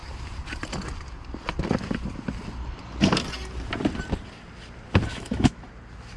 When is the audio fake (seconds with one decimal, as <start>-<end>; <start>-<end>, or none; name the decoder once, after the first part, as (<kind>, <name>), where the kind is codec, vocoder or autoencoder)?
5.1-5.7 (autoencoder, DAC-VAE)